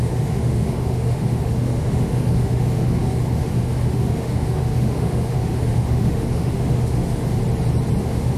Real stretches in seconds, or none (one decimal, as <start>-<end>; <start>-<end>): 7.4-8.0